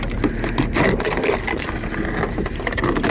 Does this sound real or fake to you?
real